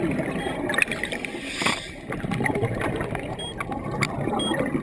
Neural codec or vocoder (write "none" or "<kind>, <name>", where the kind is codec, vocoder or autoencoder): none